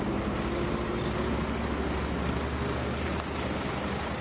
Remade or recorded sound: recorded